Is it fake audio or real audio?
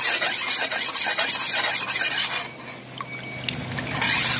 real